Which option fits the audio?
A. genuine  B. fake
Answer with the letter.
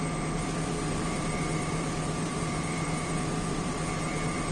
B